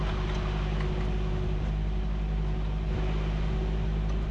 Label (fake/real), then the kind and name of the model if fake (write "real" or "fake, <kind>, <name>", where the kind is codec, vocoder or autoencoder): real